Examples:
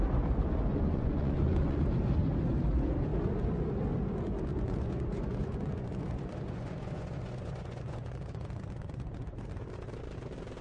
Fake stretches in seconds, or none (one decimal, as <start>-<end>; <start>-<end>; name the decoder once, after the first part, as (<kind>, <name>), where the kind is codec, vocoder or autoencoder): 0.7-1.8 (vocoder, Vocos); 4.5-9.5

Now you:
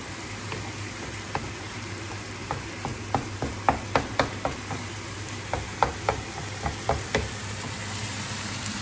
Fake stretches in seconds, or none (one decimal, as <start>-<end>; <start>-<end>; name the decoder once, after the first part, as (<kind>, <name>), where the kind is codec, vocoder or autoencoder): none

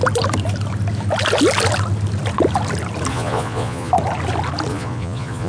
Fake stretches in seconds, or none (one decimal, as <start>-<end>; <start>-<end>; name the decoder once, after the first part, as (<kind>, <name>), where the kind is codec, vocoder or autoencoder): 3.1-3.9 (vocoder, Vocos); 4.7-5.5

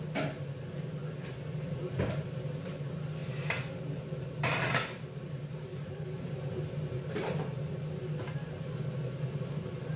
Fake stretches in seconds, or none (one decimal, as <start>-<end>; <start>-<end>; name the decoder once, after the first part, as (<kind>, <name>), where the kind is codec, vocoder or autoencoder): none